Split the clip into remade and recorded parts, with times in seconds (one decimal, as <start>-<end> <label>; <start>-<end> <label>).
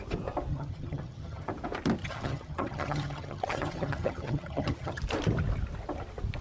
0.0-0.5 recorded; 0.5-1.5 remade; 1.5-2.0 recorded; 2.0-5.0 remade; 5.0-6.4 recorded